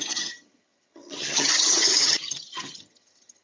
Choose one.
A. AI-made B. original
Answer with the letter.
A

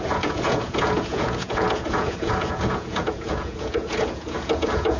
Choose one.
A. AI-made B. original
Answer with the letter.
A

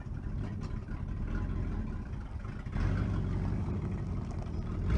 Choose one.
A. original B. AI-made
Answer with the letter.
A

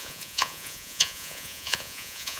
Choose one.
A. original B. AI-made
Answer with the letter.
B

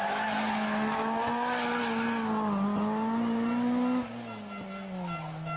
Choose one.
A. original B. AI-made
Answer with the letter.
A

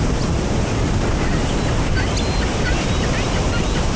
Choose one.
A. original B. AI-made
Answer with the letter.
A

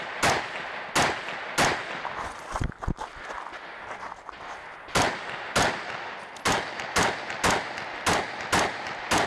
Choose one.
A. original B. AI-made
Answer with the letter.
A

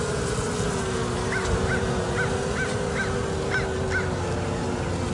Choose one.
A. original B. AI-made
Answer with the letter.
A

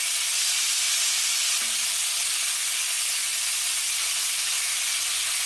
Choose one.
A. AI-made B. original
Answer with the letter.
A